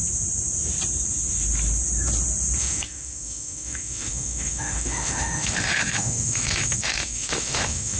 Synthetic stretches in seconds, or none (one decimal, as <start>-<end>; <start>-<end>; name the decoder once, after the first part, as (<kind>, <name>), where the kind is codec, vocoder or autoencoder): 2.6-8.0 (autoencoder, DAC-VAE)